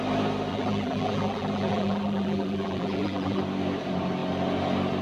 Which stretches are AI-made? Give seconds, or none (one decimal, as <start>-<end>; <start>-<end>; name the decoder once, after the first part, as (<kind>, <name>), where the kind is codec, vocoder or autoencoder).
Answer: 0.5-3.4 (vocoder, BigVGAN v2)